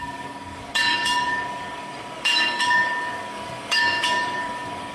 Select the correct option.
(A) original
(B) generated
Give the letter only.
B